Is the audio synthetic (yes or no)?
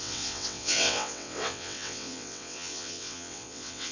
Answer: yes